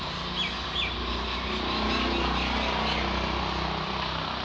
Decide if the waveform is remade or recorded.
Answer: recorded